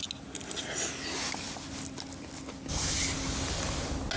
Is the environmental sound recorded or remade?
recorded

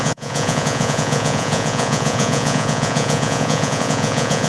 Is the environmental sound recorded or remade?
remade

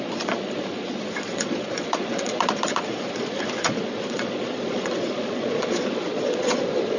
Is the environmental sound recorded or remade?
remade